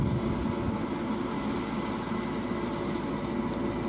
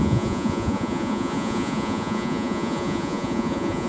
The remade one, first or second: second